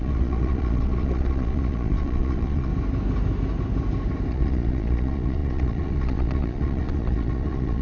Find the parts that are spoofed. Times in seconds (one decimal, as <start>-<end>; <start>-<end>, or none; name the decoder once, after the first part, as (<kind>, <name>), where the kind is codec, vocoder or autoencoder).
0.0-2.7 (vocoder, Vocos); 4.3-7.8